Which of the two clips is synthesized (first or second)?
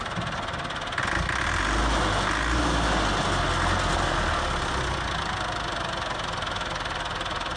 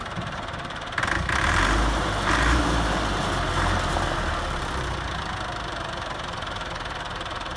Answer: second